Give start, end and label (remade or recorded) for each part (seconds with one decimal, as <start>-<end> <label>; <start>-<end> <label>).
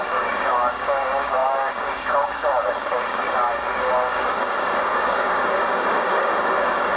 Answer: 0.0-7.0 remade